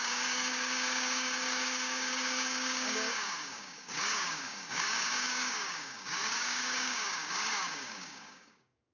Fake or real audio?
fake